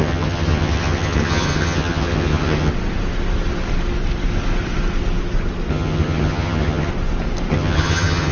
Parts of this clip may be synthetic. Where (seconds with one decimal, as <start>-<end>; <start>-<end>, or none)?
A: 0.0-2.7; 5.7-6.9; 7.5-8.3